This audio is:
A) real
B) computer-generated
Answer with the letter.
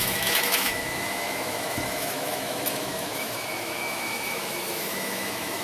B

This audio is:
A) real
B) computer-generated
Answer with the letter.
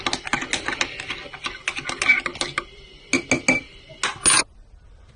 A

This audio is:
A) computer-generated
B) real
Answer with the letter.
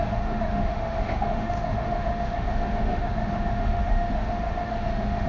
A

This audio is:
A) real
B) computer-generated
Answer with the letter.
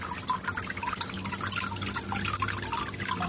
A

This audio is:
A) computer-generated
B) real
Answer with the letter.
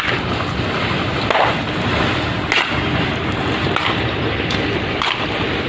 B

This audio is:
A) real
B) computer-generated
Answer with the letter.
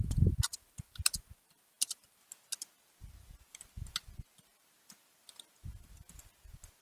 A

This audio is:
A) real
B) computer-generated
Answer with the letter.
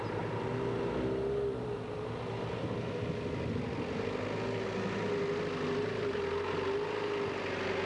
A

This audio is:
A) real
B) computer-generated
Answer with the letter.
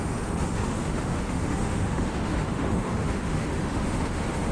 B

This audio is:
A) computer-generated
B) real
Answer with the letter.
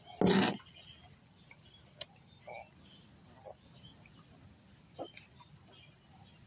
B